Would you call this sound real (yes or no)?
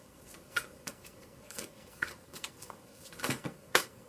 no